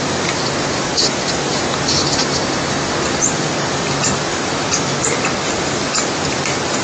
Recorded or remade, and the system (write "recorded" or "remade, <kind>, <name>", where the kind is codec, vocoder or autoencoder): remade, vocoder, BigVGAN v2